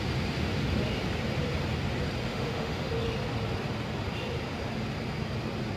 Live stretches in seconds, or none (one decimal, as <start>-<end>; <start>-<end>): 0.0-2.3; 2.9-5.8